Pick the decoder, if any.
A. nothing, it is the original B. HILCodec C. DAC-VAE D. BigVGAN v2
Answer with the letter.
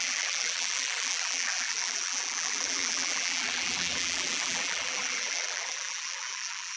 D